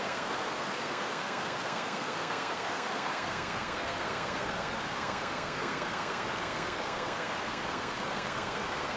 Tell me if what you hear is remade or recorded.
remade